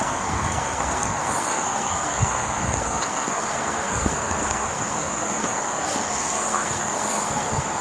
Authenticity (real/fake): fake